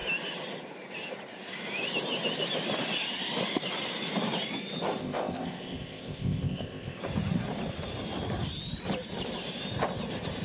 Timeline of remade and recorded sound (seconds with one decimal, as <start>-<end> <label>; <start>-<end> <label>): 0.0-5.0 recorded; 5.0-7.0 remade; 7.0-10.4 recorded